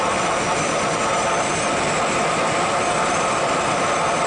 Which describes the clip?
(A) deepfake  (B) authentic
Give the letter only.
B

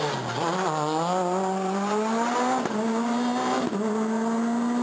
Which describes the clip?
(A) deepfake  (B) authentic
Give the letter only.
B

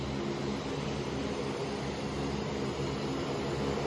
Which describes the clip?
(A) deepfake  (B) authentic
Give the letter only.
B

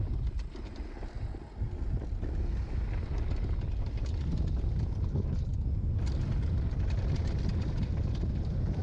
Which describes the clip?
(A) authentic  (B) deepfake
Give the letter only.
A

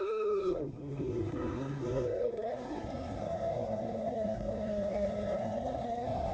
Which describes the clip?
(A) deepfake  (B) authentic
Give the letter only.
A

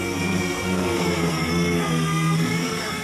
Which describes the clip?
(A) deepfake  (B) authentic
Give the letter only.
A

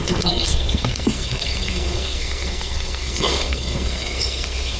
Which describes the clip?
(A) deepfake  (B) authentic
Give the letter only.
A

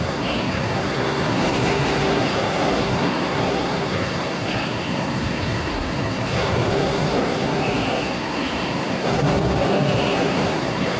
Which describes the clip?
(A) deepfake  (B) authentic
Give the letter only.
A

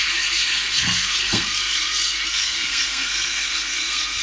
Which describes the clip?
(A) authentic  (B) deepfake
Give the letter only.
B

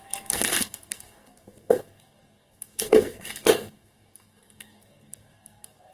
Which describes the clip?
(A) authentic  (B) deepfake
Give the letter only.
B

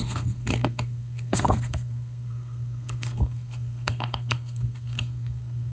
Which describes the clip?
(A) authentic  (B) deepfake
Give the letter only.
B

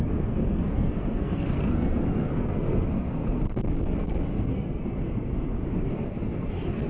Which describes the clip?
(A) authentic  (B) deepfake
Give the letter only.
B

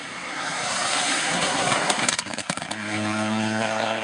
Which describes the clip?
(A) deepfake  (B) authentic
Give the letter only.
A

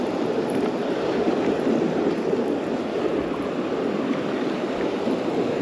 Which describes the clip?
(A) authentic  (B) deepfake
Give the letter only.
A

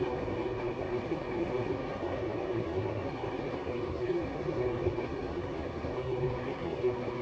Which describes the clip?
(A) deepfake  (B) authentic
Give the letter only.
A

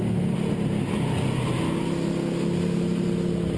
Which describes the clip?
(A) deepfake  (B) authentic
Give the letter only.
B